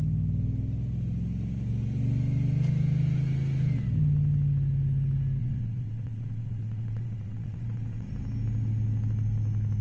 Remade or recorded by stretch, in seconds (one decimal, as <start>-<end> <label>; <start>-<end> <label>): 0.0-5.4 recorded; 5.4-8.1 remade; 8.1-9.8 recorded